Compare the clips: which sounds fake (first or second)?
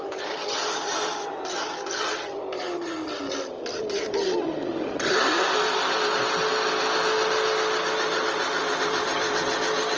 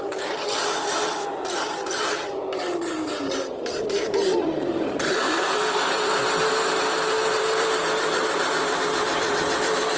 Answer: second